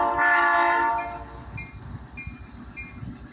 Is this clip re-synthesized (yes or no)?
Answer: no